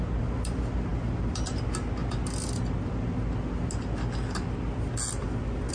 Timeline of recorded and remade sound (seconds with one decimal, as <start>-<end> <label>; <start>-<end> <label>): 0.0-5.7 recorded